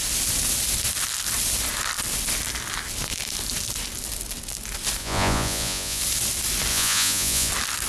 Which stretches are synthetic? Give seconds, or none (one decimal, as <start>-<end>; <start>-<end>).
5.0-6.0; 6.7-7.5